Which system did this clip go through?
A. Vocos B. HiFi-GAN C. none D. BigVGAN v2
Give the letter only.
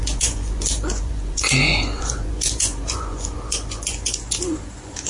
A